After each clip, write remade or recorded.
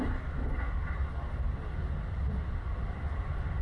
recorded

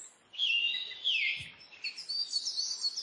recorded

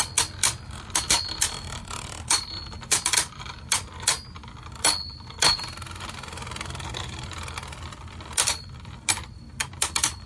recorded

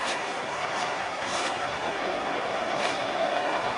remade